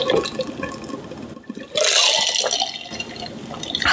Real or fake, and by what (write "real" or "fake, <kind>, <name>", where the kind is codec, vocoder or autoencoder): real